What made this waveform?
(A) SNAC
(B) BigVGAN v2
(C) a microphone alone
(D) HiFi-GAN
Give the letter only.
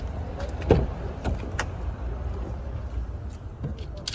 C